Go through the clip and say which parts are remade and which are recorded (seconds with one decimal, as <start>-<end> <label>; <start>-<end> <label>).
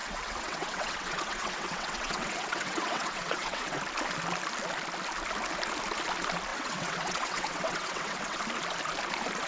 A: 0.0-3.8 remade; 3.8-6.5 recorded; 6.5-8.4 remade; 8.4-9.5 recorded